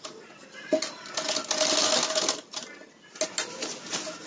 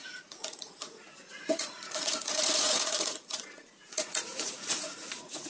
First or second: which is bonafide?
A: first